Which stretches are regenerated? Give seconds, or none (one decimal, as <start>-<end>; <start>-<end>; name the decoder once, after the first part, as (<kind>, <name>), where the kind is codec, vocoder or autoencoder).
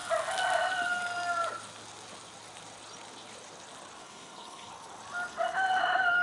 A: 4.0-4.7 (codec, HILCodec)